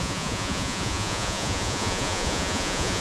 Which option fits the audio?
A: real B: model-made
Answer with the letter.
B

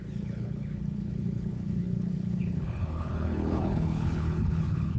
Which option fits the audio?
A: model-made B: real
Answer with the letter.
A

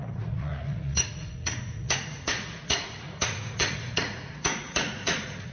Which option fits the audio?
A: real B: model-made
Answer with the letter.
B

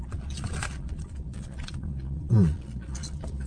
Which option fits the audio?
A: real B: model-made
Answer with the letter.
B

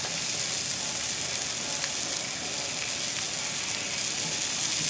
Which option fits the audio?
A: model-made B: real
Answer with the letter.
B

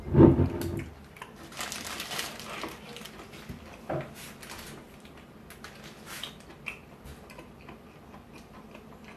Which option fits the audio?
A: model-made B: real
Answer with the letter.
B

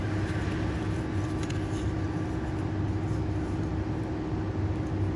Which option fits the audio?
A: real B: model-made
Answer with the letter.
A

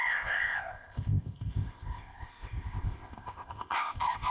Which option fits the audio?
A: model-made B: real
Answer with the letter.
A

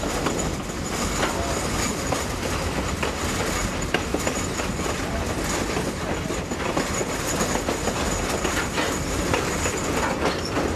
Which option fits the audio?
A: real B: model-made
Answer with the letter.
A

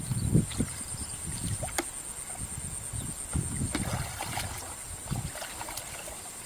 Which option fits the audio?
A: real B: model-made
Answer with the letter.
A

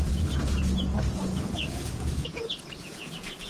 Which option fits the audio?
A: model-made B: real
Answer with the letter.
A